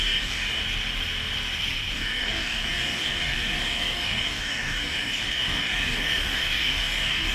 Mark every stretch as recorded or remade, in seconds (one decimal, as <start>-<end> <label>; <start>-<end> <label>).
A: 0.0-0.6 remade; 0.6-1.9 recorded; 1.9-7.3 remade